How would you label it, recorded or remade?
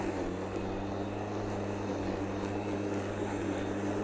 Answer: recorded